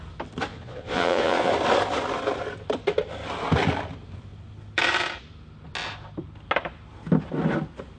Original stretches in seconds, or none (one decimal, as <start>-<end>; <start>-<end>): 0.0-0.5; 1.5-8.0